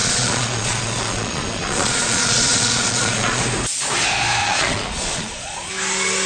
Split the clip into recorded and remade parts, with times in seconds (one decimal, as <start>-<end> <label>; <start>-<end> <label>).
0.0-3.4 remade; 3.4-4.4 recorded; 4.4-5.7 remade; 5.7-6.3 recorded